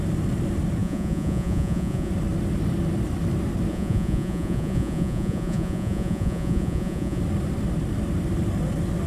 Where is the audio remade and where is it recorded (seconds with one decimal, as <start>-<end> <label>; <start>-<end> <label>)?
0.0-0.8 recorded; 0.8-2.1 remade; 2.1-3.7 recorded; 3.7-7.2 remade; 7.2-9.1 recorded